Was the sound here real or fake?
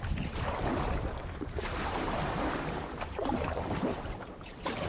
fake